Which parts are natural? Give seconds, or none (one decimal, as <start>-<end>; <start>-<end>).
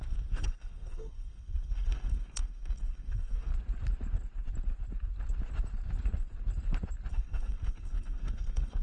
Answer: 3.5-7.1